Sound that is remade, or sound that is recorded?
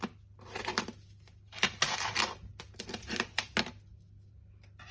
recorded